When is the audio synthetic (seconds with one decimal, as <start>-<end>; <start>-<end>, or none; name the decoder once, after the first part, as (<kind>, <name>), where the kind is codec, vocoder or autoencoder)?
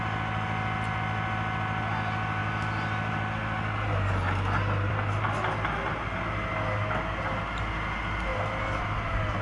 none